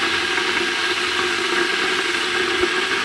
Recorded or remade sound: recorded